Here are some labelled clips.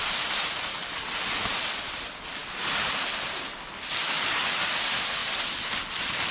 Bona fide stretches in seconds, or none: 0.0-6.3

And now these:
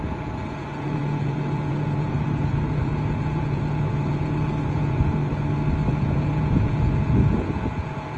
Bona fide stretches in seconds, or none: 5.2-5.9

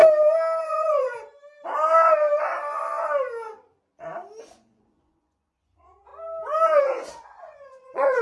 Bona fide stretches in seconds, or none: 0.0-0.6; 1.1-4.4; 6.1-6.8